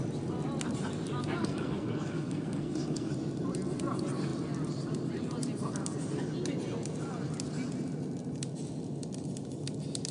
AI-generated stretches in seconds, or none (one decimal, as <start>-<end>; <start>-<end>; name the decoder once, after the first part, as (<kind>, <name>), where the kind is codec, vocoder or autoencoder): 1.4-3.1 (codec, SNAC)